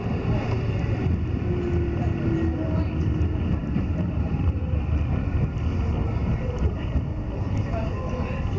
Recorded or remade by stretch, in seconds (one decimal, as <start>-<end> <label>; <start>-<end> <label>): 0.0-3.6 recorded; 3.6-4.8 remade; 4.8-6.2 recorded; 6.2-7.0 remade; 7.0-8.6 recorded